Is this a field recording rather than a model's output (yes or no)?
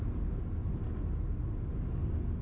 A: yes